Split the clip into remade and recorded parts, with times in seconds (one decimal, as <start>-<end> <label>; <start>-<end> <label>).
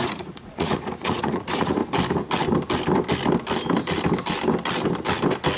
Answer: 0.0-1.8 remade; 1.8-5.6 recorded